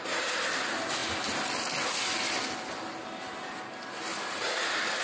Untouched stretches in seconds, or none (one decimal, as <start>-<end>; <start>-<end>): 0.0-4.1